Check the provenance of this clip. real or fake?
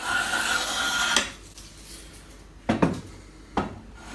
real